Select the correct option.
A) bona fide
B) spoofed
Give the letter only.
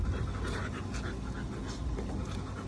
A